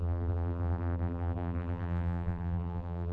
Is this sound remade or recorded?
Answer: remade